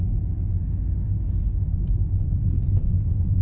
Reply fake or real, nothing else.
real